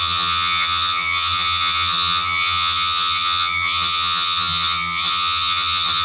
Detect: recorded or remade remade